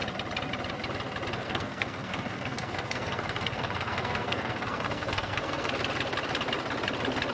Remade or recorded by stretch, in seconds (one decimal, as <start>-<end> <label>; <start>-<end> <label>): 0.0-1.3 recorded; 1.3-5.7 remade; 5.7-7.3 recorded

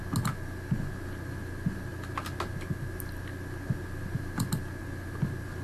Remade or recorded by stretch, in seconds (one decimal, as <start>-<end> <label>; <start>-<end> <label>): 0.0-5.6 recorded

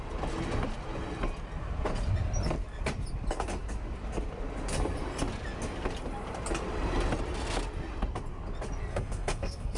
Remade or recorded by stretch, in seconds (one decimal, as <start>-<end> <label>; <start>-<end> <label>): 0.0-8.9 recorded; 8.9-9.8 remade

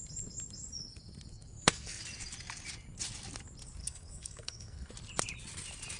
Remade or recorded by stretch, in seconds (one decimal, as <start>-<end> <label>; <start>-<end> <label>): 0.0-1.3 recorded; 1.3-2.0 remade; 2.0-3.8 recorded; 3.8-4.9 remade; 4.9-6.0 recorded

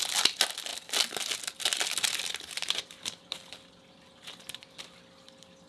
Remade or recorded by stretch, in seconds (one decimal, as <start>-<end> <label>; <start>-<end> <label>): 0.0-5.7 recorded

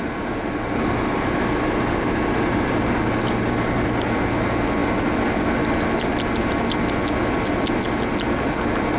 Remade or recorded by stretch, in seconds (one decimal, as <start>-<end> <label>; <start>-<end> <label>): 0.0-9.0 recorded

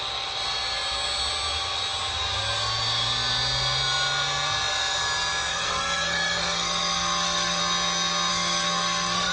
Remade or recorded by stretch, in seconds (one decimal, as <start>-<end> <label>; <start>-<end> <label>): 0.0-5.5 recorded; 5.5-7.6 remade; 7.6-8.3 recorded; 8.3-9.3 remade